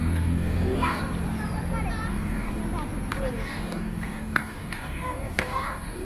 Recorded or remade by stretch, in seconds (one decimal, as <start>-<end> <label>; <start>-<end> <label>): 0.0-1.0 remade; 1.0-2.1 recorded; 2.1-2.6 remade; 2.6-3.3 recorded; 3.3-6.0 remade